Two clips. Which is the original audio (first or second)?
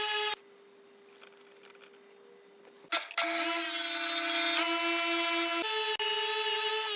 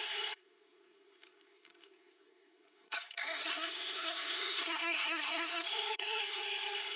first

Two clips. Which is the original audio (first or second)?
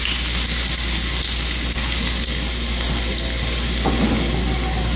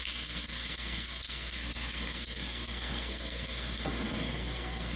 first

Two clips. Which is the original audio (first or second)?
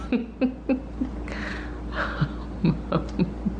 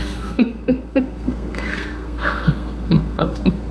first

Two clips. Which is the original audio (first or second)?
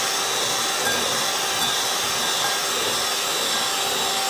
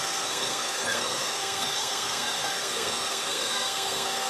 first